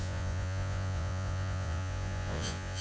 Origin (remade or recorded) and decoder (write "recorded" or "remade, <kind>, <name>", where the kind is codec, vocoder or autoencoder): remade, vocoder, Vocos